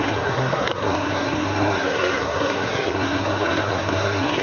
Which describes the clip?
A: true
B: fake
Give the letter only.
B